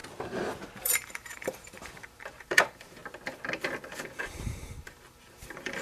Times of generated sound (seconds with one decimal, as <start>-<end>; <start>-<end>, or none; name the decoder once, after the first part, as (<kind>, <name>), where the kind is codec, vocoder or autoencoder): 0.8-3.0 (vocoder, BigVGAN v2); 3.9-5.8

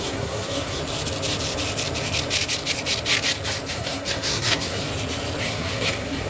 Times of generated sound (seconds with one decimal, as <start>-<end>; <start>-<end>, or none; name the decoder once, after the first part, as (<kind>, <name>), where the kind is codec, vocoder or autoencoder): 0.0-0.8 (codec, SNAC); 3.7-4.8; 5.4-6.3

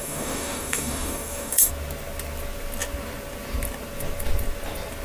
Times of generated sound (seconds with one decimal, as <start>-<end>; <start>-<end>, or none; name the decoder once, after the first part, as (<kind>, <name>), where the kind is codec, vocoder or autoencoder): 0.0-1.7 (codec, DAC)

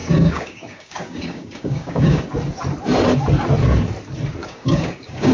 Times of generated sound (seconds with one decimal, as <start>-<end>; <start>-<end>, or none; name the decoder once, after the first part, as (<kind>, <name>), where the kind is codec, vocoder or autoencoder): 0.0-2.2 (codec, DAC); 4.4-5.3

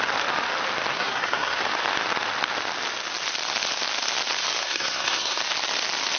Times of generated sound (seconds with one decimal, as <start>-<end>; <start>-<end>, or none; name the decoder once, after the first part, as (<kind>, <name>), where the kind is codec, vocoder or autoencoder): 0.9-1.6 (codec, SNAC); 4.6-5.4

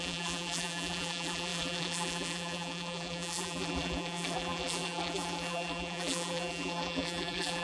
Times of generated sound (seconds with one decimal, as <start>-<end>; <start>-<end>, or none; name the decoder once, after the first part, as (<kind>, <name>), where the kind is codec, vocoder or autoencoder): 0.0-7.6 (vocoder, BigVGAN v2)

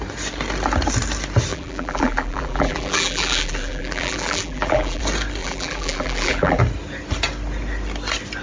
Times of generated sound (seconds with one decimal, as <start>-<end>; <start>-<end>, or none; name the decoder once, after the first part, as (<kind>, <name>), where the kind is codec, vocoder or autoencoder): 1.5-5.0 (vocoder, BigVGAN v2); 5.4-6.6

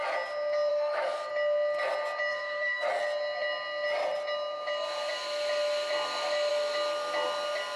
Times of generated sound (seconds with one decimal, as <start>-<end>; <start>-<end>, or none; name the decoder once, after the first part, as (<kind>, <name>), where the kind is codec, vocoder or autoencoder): 0.7-1.3 (codec, DAC); 2.3-2.9